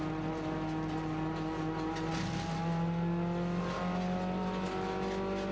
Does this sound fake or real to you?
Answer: real